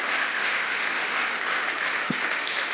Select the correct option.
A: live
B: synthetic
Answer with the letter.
B